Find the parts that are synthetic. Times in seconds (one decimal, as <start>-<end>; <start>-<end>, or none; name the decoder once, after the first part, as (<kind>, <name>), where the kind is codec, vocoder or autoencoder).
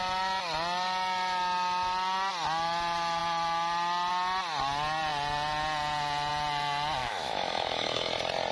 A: 7.0-8.1 (autoencoder, DAC-VAE)